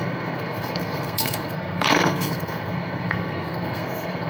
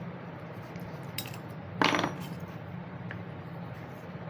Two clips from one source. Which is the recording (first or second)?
second